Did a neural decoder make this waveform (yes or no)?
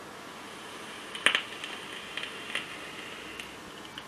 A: no